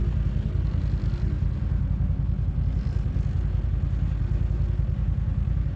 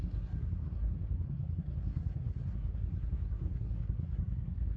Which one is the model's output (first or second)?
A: second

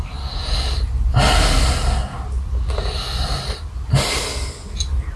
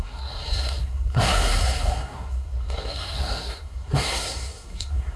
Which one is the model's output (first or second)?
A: second